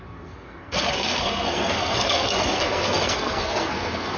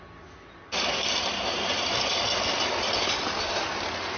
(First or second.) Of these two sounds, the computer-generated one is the first